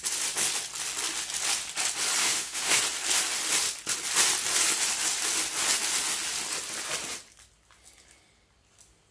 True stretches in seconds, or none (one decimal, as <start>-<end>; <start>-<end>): 0.0-2.2; 2.8-9.1